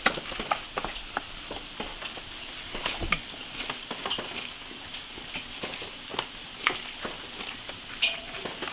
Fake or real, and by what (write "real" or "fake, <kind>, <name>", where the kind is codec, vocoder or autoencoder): real